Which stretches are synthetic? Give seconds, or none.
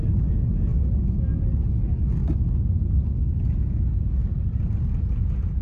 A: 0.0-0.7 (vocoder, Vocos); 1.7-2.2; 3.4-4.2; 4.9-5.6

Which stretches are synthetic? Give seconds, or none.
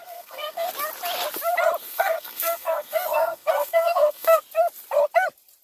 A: 0.0-0.7 (codec, SNAC); 1.8-4.4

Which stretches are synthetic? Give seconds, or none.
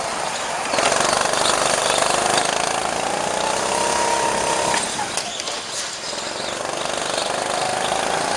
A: none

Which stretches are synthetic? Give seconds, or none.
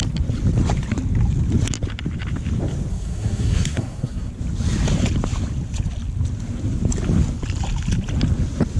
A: 2.9-4.3 (codec, SNAC)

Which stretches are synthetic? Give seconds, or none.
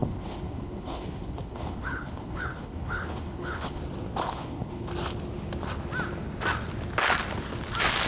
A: 0.0-3.8 (codec, HILCodec); 4.2-4.9